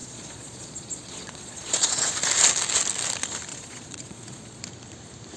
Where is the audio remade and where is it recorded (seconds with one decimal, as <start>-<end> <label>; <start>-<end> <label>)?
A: 0.0-2.1 remade; 2.1-3.5 recorded; 3.5-4.6 remade; 4.6-5.4 recorded